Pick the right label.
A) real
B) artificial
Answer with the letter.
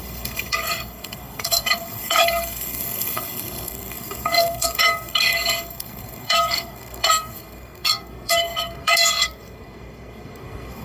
B